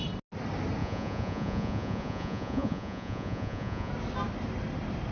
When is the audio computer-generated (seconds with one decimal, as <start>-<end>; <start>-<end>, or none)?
0.8-3.9